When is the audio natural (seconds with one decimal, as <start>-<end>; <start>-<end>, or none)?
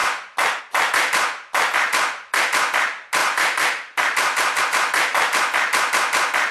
0.0-3.2; 4.6-6.5